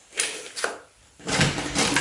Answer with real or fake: real